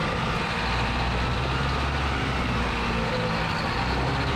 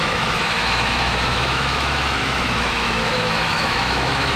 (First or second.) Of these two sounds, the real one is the first